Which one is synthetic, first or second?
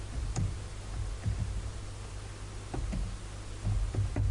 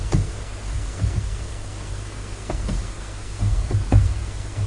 second